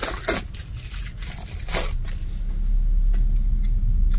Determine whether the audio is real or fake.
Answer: real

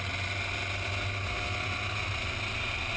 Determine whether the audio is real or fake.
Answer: real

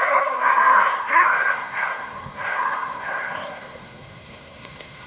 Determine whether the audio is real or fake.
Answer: fake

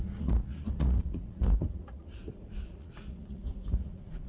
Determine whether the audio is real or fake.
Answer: fake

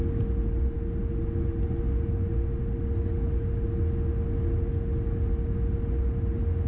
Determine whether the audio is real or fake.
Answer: real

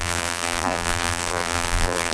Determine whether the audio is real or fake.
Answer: fake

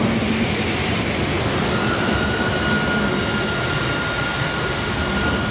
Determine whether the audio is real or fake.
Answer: real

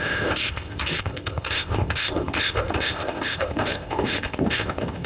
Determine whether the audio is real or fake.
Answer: fake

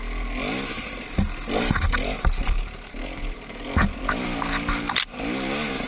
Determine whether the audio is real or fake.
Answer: real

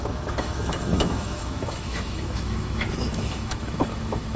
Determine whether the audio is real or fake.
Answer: fake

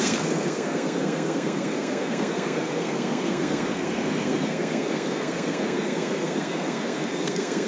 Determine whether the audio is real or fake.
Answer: fake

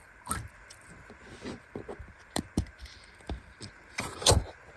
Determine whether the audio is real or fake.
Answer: fake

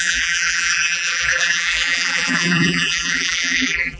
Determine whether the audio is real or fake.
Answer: fake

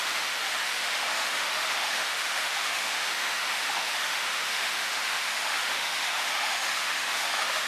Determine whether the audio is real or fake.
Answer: fake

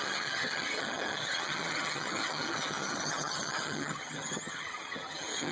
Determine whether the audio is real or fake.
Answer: fake